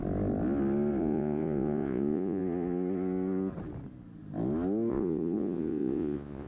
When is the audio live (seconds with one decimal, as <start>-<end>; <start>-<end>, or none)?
0.0-1.0; 2.4-4.9